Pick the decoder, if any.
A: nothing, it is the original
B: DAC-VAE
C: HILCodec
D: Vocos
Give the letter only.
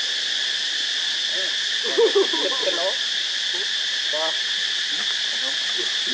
A